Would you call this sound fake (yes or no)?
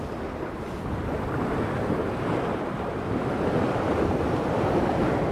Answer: no